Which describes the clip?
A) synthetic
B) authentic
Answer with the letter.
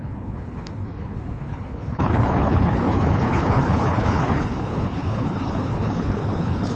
A